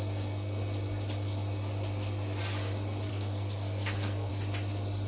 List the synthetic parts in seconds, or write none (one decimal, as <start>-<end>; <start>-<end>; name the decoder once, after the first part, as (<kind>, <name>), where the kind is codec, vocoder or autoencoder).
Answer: 3.1-4.3 (codec, SNAC)